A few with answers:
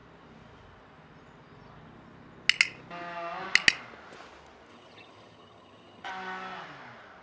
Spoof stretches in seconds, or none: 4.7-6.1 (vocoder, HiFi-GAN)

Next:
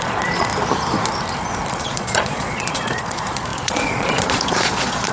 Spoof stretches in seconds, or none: 0.0-0.5 (vocoder, Vocos); 1.7-5.1